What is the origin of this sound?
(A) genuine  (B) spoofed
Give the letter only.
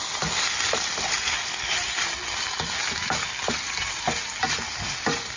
A